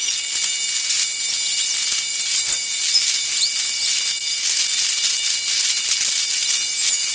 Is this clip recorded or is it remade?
recorded